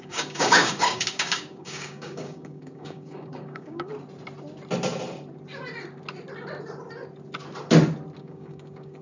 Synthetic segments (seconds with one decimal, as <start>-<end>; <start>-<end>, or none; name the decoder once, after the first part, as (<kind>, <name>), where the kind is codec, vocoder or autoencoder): 0.0-3.9 (codec, DAC); 8.2-9.0